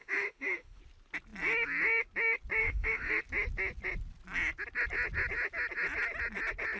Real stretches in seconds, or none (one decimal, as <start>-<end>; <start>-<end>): 0.8-2.6; 3.1-6.8